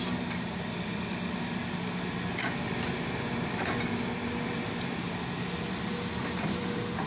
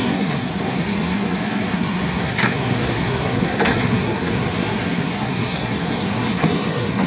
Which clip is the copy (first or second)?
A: second